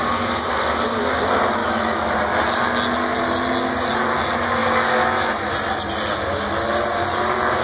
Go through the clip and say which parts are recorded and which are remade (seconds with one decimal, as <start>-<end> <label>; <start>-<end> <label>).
0.0-1.6 recorded; 1.6-2.1 remade; 2.1-4.6 recorded; 4.6-5.3 remade; 5.3-7.6 recorded